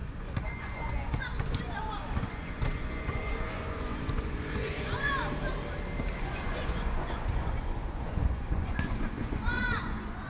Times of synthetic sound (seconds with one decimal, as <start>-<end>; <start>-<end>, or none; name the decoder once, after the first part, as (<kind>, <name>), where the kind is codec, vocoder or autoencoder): 0.0-5.2 (vocoder, Vocos); 6.2-10.3